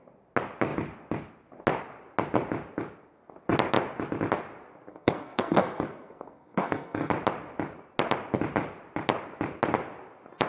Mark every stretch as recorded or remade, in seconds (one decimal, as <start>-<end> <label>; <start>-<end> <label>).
0.0-4.9 recorded; 4.9-7.1 remade; 7.1-10.5 recorded